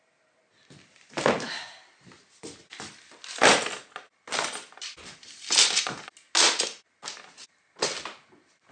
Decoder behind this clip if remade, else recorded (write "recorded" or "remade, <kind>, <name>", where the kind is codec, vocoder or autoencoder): recorded